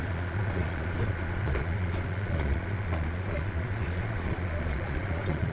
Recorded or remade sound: remade